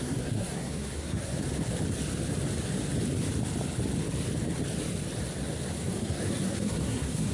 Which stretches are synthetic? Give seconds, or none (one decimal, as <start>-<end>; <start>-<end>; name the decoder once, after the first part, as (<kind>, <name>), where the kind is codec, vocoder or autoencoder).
0.0-1.3 (codec, SNAC); 5.7-7.3